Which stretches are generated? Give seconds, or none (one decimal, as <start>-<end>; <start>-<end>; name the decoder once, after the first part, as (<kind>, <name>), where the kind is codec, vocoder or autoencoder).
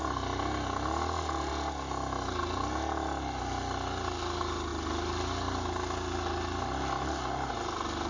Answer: none